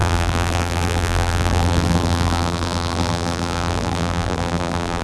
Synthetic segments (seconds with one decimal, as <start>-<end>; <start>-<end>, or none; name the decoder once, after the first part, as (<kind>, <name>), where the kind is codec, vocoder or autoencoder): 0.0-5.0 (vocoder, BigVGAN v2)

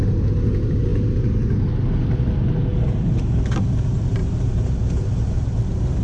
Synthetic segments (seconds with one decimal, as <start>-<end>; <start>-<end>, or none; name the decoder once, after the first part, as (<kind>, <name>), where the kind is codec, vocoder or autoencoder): 4.2-5.6 (vocoder, BigVGAN v2)

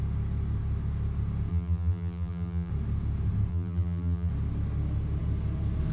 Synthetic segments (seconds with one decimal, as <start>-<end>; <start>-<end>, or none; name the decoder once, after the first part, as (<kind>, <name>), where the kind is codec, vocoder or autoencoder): 1.5-2.7 (vocoder, BigVGAN v2); 3.5-4.3